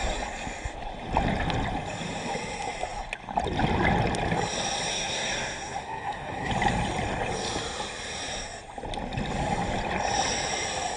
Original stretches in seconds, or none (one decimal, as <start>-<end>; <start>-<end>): 0.0-4.9; 6.5-11.0